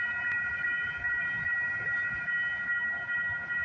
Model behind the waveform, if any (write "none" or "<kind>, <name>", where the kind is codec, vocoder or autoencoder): none